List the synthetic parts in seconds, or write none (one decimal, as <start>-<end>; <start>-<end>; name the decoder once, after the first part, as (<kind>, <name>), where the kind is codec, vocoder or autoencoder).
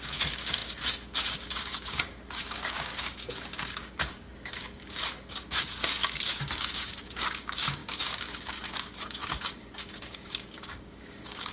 0.0-11.5 (codec, DAC)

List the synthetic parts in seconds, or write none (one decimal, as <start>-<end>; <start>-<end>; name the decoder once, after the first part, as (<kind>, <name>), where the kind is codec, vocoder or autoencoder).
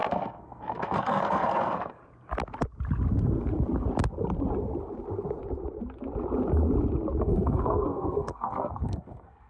0.0-2.0 (codec, SNAC); 7.2-9.5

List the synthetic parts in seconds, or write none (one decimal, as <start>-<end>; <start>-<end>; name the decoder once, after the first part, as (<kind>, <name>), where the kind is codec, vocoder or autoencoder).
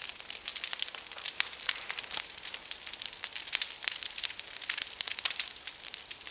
none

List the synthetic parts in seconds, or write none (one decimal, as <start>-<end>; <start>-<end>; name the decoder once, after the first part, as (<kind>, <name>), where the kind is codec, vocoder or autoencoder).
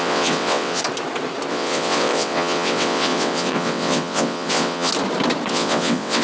0.0-0.8 (vocoder, WaveNeXt); 1.5-4.9; 5.5-6.2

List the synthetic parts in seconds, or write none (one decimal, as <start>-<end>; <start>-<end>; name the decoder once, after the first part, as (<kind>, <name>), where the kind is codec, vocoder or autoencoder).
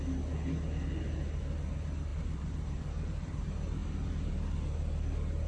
2.1-3.4 (vocoder, BigVGAN v2)